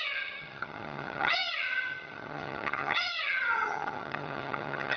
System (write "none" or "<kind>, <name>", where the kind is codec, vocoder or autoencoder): vocoder, HiFi-GAN